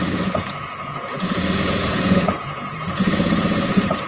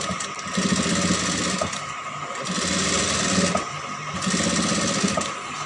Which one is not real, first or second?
first